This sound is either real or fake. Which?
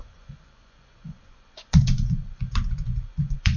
fake